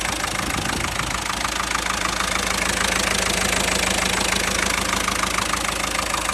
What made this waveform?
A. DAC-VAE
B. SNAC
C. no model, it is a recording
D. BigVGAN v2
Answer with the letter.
C